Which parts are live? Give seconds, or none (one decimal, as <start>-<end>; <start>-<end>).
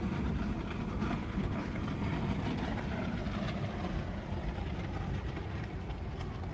0.0-1.2; 1.8-6.5